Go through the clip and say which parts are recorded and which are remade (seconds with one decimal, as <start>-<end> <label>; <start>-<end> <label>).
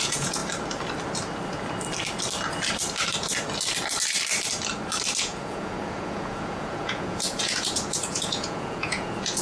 0.0-0.4 remade; 0.4-5.2 recorded; 5.2-9.4 remade